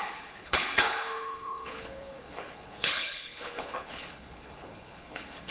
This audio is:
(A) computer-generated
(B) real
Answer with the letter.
A